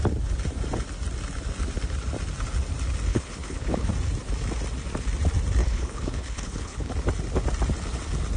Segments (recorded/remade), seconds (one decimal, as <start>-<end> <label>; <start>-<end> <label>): 0.0-3.1 recorded; 3.1-3.9 remade; 3.9-5.6 recorded; 5.6-6.9 remade; 6.9-8.4 recorded